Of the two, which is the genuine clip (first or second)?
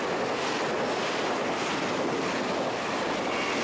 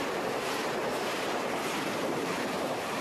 first